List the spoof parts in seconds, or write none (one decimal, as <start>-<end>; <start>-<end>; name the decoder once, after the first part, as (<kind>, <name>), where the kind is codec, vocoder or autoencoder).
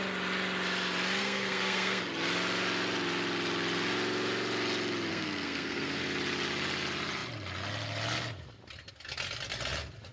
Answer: 1.2-2.0 (codec, SNAC); 5.1-6.0